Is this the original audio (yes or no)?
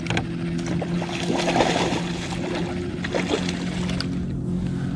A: yes